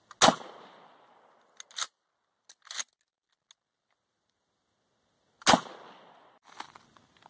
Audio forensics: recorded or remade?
recorded